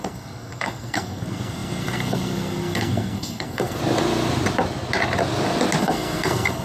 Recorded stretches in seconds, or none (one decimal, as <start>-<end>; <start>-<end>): 3.8-5.8